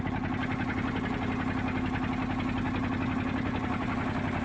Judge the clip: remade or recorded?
recorded